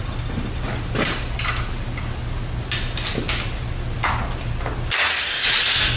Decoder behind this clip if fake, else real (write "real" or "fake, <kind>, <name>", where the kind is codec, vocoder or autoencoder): real